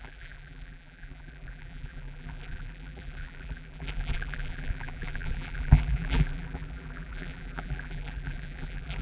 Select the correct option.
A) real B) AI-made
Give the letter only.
B